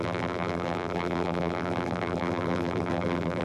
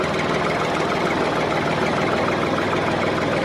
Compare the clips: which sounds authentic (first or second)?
second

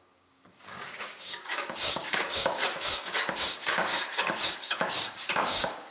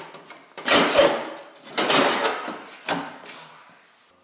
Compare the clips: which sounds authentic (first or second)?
second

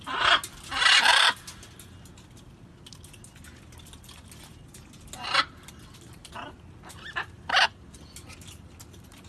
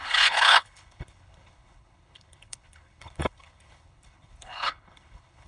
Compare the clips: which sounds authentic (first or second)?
first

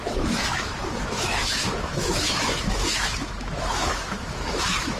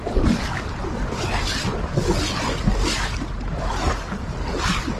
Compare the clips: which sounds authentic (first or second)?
second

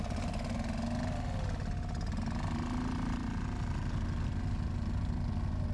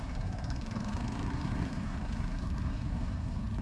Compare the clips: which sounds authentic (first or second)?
first